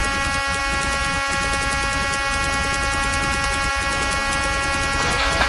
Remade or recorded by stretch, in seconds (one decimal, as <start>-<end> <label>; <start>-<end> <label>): 0.0-5.5 recorded